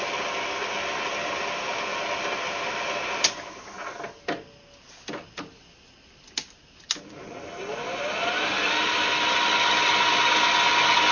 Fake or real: real